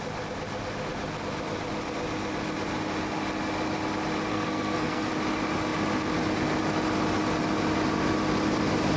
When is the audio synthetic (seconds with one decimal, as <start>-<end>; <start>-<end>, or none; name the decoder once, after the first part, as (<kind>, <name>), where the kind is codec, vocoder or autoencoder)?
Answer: 4.3-5.1 (codec, SNAC)